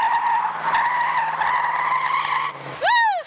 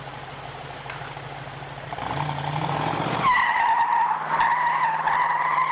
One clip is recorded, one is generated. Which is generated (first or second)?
second